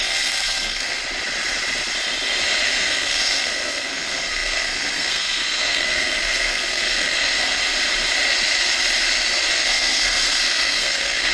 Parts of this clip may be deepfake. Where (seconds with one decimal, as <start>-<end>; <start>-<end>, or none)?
0.0-1.0; 2.7-7.6; 9.5-11.3